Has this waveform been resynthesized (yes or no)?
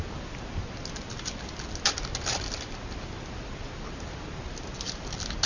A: no